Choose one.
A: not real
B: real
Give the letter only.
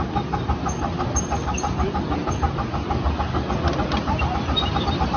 B